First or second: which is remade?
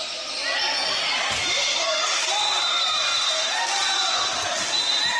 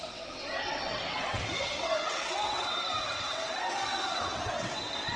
second